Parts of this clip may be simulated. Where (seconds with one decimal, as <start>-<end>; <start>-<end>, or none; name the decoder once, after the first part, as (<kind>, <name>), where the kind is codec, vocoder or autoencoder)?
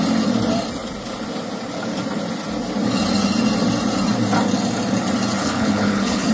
5.4-6.3 (codec, HILCodec)